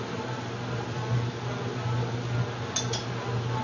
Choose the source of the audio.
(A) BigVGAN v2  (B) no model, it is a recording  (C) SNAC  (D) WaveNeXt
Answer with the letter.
B